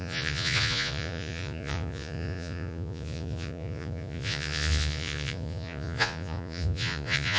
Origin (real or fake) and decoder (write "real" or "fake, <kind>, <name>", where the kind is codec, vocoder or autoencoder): fake, vocoder, Vocos